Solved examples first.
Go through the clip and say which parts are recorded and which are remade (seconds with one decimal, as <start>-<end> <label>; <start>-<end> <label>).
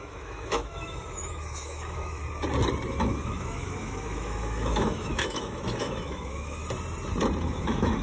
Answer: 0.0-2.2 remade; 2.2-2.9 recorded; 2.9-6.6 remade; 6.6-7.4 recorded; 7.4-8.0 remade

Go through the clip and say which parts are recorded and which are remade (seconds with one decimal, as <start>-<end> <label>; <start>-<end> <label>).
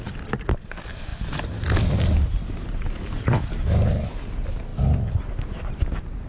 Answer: 0.0-1.1 recorded; 1.1-3.5 remade; 3.5-6.3 recorded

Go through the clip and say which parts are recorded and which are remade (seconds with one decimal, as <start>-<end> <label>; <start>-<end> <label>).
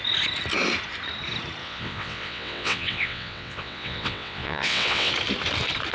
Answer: 0.0-1.6 recorded; 1.6-5.1 remade; 5.1-5.9 recorded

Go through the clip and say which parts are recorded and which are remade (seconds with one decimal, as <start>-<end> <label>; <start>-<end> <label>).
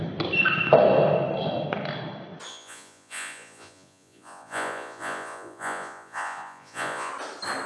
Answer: 0.0-2.5 recorded; 2.5-7.1 remade; 7.1-7.7 recorded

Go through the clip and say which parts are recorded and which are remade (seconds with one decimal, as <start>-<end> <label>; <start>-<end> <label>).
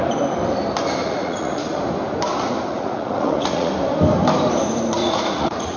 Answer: 0.0-1.0 recorded; 1.0-1.8 remade; 1.8-2.7 recorded; 2.7-3.7 remade; 3.7-5.0 recorded; 5.0-5.8 remade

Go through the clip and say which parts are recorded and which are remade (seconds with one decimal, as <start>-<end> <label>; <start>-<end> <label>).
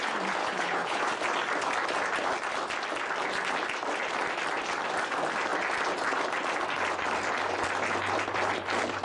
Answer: 0.0-0.4 recorded; 0.4-1.0 remade; 1.0-9.0 recorded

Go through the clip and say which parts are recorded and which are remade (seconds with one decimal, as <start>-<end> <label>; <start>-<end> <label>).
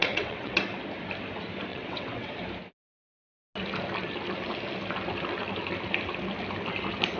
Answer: 0.0-0.6 remade; 0.6-1.7 recorded; 1.7-2.3 remade; 2.3-7.2 recorded